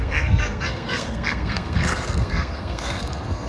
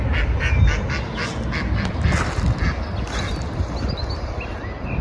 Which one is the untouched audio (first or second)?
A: second